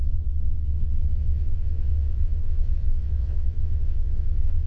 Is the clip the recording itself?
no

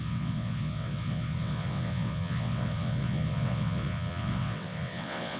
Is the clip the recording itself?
no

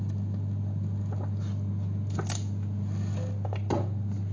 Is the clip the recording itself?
yes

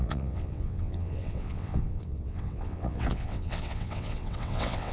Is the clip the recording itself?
no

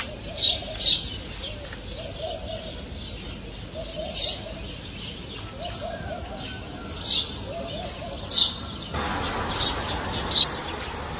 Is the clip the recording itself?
yes